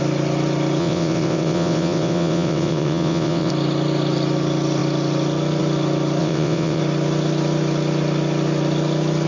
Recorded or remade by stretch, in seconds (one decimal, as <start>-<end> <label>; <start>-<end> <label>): 0.0-0.8 recorded; 0.8-3.5 remade; 3.5-6.2 recorded; 6.2-6.8 remade; 6.8-9.3 recorded